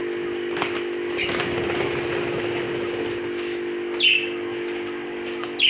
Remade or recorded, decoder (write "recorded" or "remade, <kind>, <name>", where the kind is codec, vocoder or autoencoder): recorded